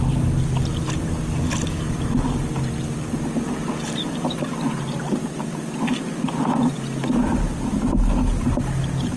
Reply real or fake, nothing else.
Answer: real